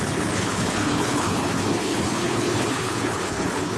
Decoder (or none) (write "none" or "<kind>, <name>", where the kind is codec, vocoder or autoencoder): codec, HILCodec